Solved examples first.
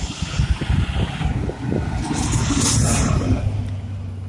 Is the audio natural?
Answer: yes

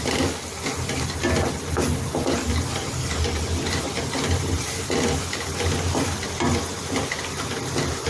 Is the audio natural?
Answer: yes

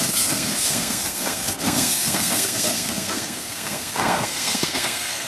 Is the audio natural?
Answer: no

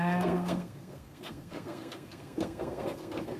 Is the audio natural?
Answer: no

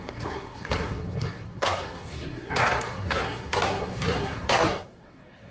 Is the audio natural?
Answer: no